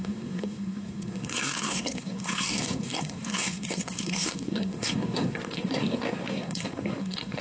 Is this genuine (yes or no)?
no